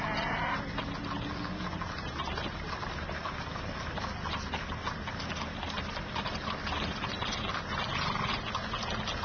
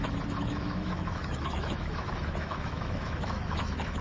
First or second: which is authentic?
first